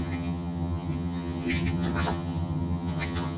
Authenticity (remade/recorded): remade